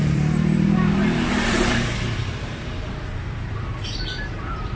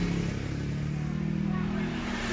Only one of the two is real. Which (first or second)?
second